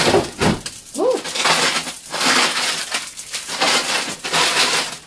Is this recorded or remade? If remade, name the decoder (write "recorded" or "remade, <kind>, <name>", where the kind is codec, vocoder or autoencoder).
recorded